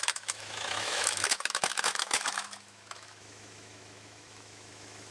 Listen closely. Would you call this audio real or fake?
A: fake